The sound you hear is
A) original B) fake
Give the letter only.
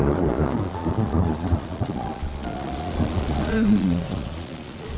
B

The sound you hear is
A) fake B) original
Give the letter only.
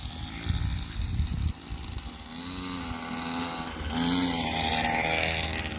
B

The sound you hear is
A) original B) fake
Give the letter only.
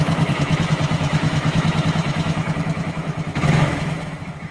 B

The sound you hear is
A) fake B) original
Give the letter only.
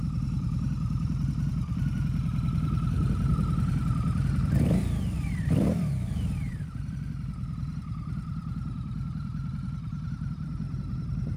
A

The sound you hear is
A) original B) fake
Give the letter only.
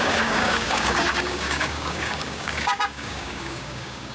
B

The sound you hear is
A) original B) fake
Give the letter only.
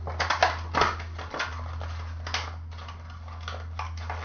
A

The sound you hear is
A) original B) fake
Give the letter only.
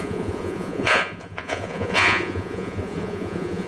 B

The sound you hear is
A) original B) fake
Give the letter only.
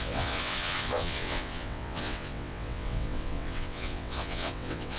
B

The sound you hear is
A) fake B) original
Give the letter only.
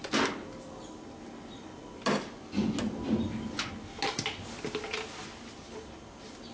B